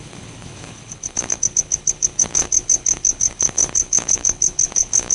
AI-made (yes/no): yes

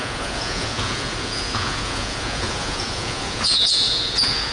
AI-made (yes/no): yes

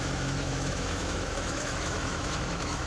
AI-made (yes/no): yes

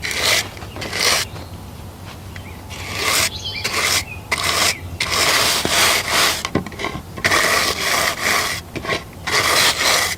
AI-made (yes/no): no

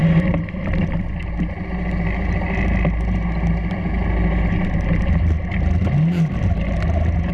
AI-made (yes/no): no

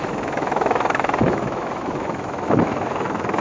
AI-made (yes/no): yes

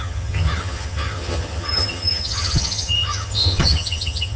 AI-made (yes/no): yes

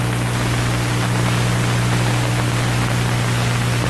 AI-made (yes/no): no